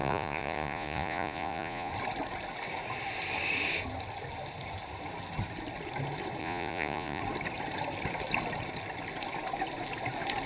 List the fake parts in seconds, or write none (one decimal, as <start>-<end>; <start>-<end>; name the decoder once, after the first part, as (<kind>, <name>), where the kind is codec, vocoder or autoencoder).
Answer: 0.0-1.9 (vocoder, Vocos); 6.4-7.2